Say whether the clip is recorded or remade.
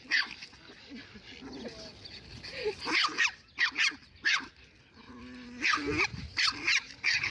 recorded